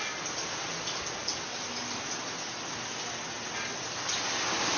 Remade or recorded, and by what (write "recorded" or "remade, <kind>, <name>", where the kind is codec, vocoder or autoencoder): recorded